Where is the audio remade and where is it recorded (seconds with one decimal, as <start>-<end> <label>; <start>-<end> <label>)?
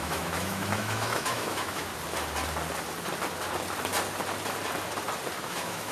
0.0-1.9 remade; 1.9-5.4 recorded; 5.4-5.9 remade